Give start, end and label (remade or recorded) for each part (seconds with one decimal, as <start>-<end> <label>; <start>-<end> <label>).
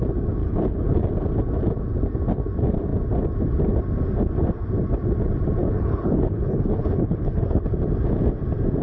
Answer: 0.0-0.4 recorded; 0.4-1.0 remade; 1.0-5.6 recorded; 5.6-7.7 remade; 7.7-8.8 recorded